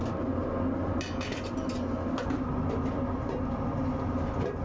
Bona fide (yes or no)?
yes